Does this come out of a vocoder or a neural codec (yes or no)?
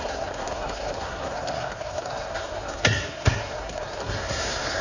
yes